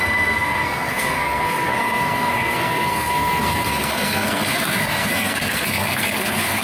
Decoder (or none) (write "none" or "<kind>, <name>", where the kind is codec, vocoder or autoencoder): codec, SNAC